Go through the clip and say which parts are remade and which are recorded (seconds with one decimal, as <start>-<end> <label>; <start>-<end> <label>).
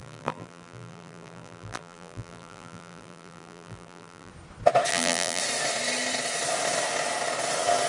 0.0-4.3 remade; 4.3-4.9 recorded; 4.9-5.4 remade; 5.4-7.9 recorded